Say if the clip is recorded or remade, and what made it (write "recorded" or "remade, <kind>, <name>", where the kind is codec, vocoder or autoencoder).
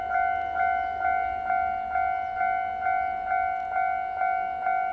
recorded